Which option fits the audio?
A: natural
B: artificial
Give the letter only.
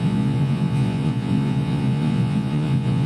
B